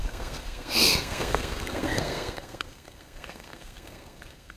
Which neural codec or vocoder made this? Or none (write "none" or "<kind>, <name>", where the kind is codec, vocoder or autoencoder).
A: codec, SNAC